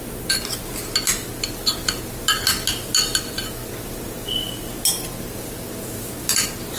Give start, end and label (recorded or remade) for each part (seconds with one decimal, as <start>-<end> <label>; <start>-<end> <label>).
0.0-6.8 recorded